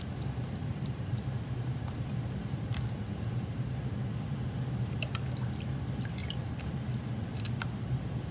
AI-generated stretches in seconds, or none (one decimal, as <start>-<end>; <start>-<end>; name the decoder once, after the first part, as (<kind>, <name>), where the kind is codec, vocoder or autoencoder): 0.6-5.0 (vocoder, BigVGAN v2); 6.2-6.8